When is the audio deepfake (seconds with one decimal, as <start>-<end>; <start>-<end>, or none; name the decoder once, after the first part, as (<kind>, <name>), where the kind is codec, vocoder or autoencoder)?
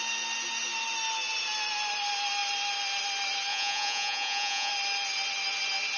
3.5-4.7 (vocoder, Vocos)